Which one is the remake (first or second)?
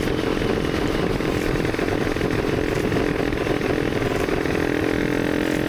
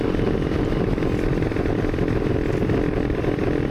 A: first